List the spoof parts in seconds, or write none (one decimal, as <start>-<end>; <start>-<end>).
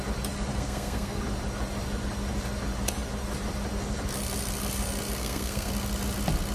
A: 0.5-1.2; 5.2-5.7